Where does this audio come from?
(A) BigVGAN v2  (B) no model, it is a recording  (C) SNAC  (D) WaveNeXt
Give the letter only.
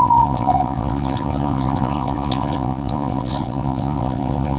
D